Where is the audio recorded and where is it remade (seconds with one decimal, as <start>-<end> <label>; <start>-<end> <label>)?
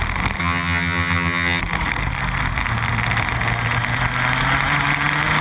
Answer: 0.0-0.4 recorded; 0.4-1.6 remade; 1.6-5.4 recorded